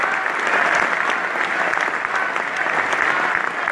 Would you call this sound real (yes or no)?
yes